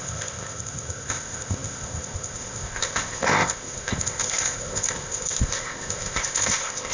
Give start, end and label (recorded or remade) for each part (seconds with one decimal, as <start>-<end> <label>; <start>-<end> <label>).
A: 0.0-6.9 remade